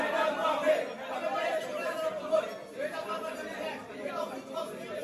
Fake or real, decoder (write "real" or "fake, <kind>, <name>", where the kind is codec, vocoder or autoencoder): real